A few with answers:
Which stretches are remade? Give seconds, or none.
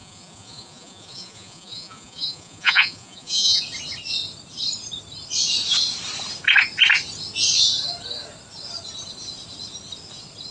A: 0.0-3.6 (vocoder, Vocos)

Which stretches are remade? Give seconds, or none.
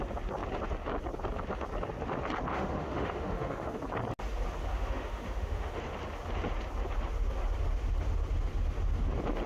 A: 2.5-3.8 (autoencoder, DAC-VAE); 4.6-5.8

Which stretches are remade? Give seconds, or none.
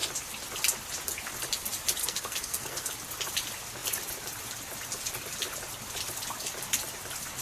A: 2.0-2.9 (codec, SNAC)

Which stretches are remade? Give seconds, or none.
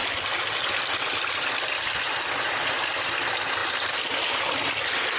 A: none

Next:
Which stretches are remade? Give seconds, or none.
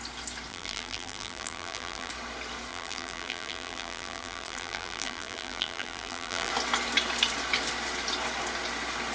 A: 0.5-2.1 (vocoder, BigVGAN v2); 2.7-6.5